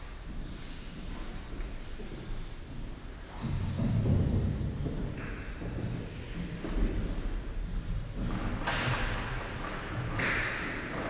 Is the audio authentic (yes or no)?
yes